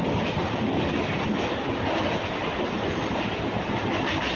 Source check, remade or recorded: recorded